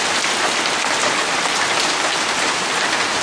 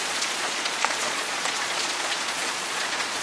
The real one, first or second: first